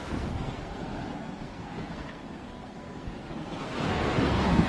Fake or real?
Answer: fake